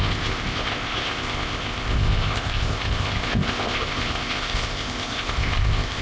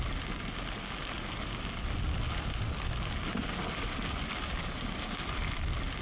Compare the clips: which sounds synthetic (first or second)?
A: first